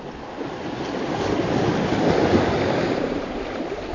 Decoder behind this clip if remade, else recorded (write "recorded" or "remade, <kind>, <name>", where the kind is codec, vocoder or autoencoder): recorded